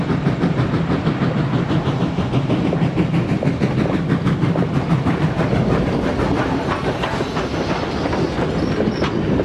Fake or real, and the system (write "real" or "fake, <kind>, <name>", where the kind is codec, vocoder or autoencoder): real